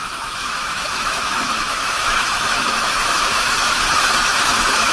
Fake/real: fake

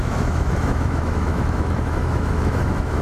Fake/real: fake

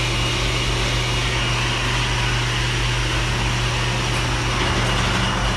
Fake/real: real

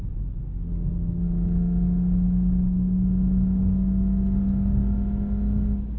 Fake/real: real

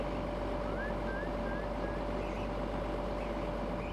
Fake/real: real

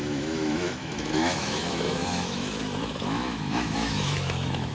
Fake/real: fake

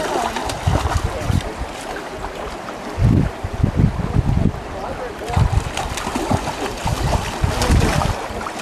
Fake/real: real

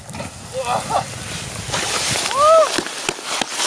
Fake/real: real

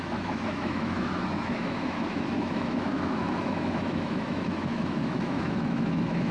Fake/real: fake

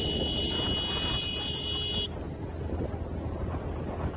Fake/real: real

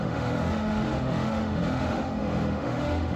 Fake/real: fake